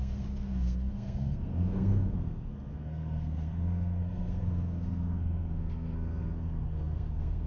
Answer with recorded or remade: remade